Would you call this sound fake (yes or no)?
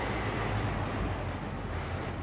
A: no